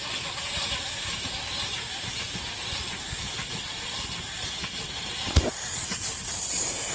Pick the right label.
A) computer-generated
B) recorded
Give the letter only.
B